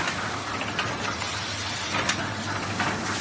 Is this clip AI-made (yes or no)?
no